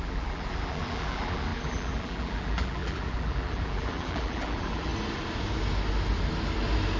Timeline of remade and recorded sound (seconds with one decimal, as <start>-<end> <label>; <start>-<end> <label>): 0.0-4.9 remade; 4.9-7.0 recorded